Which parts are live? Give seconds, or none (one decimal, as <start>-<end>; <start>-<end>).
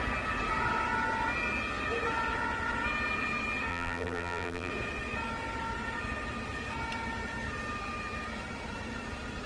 0.0-3.7; 4.7-9.5